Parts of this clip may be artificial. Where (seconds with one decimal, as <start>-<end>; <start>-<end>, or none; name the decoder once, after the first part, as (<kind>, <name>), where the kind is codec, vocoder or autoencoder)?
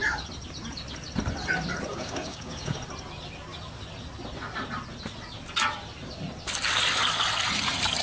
1.9-2.8 (codec, DAC)